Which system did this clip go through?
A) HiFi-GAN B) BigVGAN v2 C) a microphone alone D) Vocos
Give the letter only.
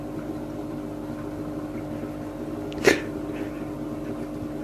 C